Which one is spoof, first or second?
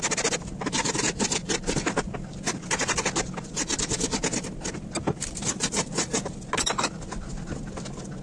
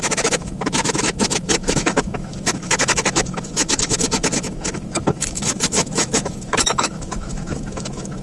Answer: second